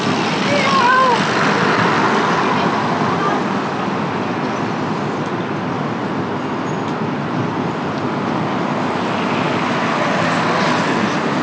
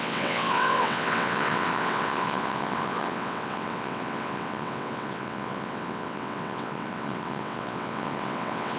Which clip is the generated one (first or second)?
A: second